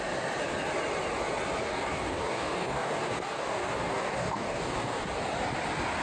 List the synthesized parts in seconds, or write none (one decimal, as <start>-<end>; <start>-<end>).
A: 1.6-5.1